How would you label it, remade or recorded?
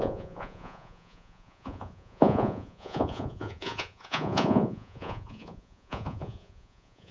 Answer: remade